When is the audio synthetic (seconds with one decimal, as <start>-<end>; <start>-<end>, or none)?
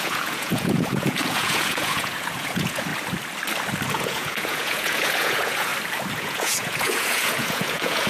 0.0-2.9; 3.9-5.7; 6.2-8.1